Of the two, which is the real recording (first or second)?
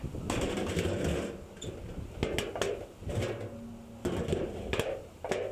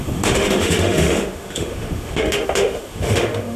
first